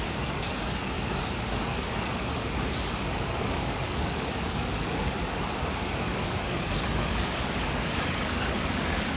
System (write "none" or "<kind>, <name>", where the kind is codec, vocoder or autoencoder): codec, DAC